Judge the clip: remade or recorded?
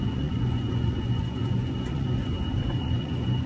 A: remade